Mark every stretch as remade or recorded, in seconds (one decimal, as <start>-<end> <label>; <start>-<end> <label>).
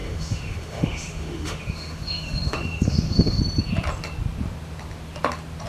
0.0-3.4 remade; 3.4-5.7 recorded